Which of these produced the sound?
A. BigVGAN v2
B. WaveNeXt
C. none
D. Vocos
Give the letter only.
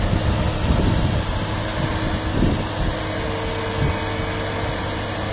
C